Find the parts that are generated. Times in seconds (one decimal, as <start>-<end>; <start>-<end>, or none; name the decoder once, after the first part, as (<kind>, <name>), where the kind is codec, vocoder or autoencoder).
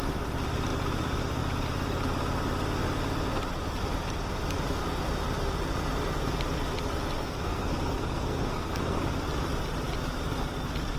7.2-9.0 (codec, SNAC)